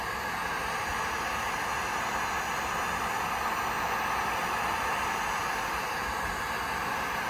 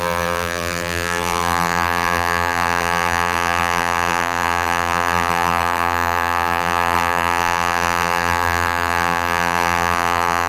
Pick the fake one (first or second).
second